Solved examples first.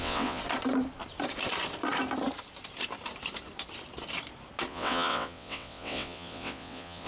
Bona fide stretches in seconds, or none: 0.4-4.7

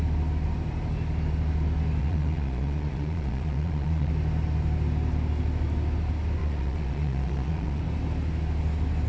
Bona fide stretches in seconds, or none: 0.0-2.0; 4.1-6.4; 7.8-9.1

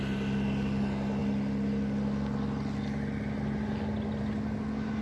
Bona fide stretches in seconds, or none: 0.0-5.0

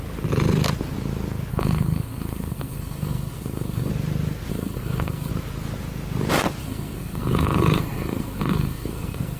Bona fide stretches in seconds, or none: 0.0-1.5; 3.9-4.5; 5.3-6.6

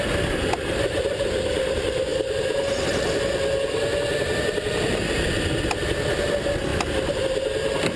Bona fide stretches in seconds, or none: 0.0-8.0

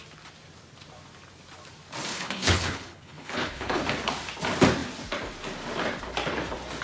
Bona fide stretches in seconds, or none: 0.0-2.1; 3.8-6.8